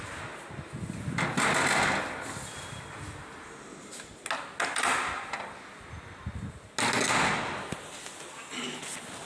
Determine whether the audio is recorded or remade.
recorded